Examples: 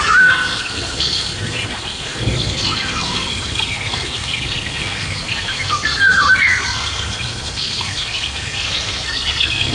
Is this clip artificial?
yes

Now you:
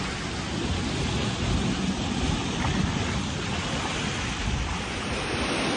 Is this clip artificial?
no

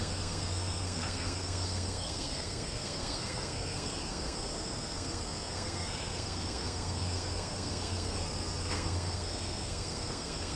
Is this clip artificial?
yes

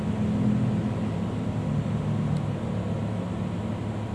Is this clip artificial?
no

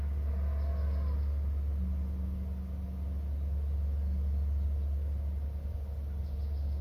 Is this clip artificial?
no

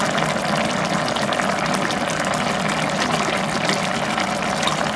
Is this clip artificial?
no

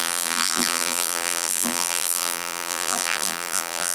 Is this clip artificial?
yes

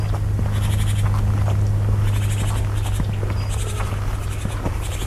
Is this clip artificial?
no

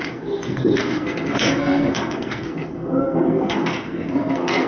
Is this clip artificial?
yes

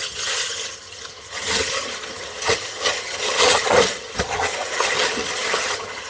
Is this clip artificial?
yes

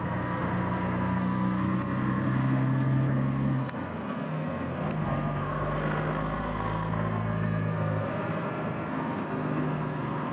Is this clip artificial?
yes